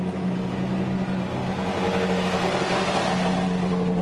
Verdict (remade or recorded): recorded